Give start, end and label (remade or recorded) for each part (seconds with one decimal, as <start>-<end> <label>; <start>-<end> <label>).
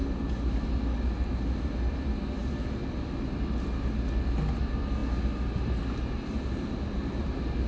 0.0-7.7 recorded